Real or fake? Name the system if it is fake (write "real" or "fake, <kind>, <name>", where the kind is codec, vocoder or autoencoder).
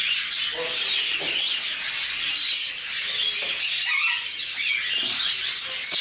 real